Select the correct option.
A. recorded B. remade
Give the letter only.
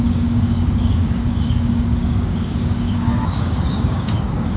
B